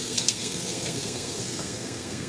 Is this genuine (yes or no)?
no